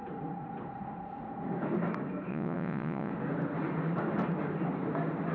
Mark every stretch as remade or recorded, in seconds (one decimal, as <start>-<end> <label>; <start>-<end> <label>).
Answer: 0.0-2.3 recorded; 2.3-3.1 remade; 3.1-5.3 recorded